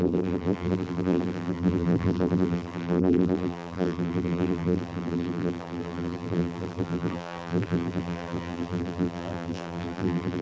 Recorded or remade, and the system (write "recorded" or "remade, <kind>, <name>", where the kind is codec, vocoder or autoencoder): remade, vocoder, BigVGAN v2